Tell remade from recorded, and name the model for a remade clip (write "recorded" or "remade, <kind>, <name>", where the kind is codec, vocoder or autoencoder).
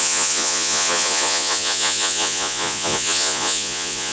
remade, vocoder, Vocos